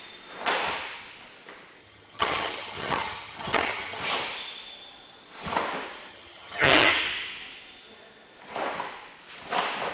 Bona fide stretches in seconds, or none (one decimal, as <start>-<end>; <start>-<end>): 0.0-1.8; 4.0-6.1; 6.9-9.9